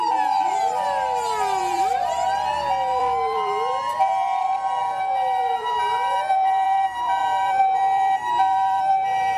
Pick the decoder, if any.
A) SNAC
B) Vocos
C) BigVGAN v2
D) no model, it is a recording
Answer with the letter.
C